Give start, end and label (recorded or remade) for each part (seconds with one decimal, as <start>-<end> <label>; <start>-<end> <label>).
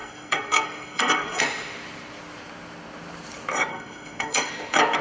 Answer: 0.0-1.4 remade; 1.4-3.7 recorded; 3.7-4.5 remade; 4.5-5.0 recorded